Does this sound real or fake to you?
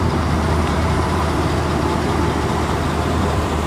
fake